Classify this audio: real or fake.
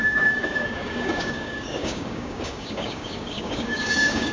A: fake